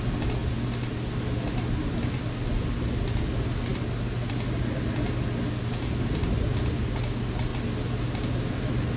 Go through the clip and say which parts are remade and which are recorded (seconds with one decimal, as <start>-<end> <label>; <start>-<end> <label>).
0.0-9.0 recorded